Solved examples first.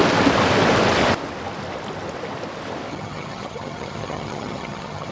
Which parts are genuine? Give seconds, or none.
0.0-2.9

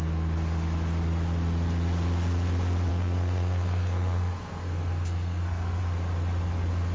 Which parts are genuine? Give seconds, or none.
0.0-2.9; 5.8-6.9

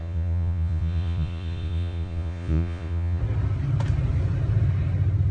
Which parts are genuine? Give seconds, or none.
3.2-5.3

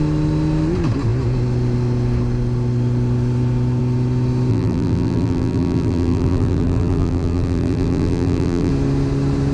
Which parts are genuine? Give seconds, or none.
0.0-4.5; 8.7-9.5